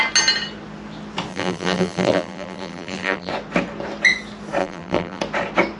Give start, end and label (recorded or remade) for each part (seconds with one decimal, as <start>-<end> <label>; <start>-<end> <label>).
0.0-1.3 recorded; 1.3-3.3 remade; 3.3-4.6 recorded; 4.6-5.2 remade; 5.2-5.8 recorded